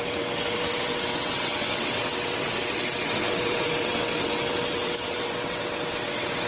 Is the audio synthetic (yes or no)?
yes